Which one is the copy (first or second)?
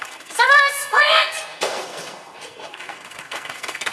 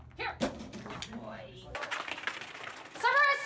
first